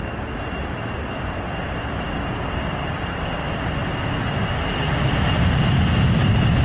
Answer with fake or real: real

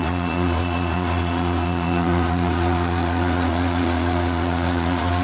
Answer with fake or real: fake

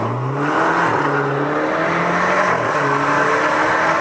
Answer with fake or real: real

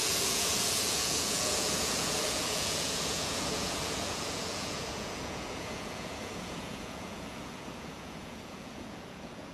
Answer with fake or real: fake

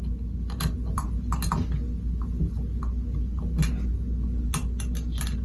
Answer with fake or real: real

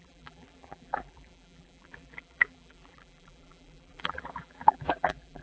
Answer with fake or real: fake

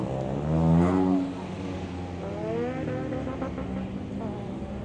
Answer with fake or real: real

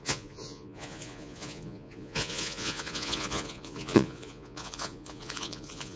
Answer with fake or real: fake